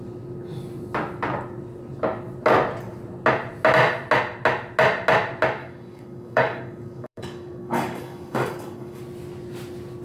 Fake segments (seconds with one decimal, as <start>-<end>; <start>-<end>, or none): 5.6-9.0